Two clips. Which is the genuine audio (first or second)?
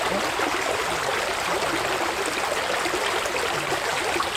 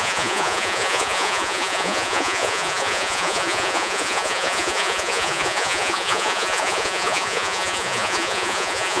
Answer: first